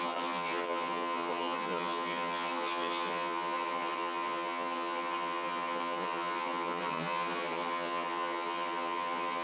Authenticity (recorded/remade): remade